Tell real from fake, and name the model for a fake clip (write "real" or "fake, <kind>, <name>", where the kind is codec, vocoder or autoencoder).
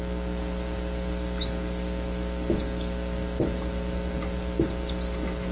real